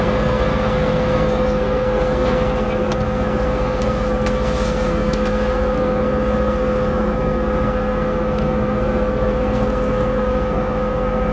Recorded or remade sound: remade